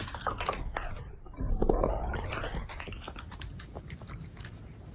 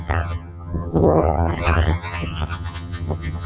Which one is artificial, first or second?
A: second